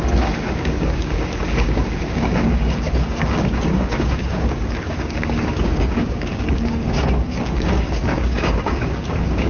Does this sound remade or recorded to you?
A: remade